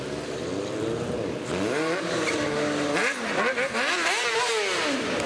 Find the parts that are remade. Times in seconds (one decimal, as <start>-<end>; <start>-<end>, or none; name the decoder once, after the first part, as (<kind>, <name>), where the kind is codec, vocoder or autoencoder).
none